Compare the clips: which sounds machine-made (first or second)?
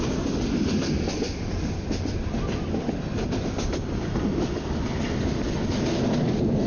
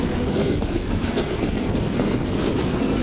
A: second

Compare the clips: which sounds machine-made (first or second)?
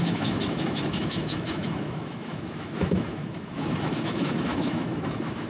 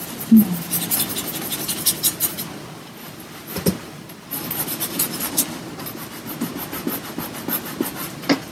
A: first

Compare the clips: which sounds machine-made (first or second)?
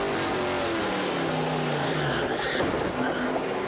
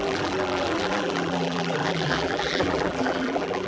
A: second